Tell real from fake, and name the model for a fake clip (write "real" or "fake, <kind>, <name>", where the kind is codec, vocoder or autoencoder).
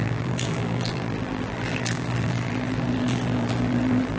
fake, vocoder, BigVGAN v2